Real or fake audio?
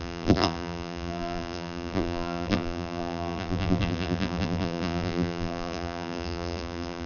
fake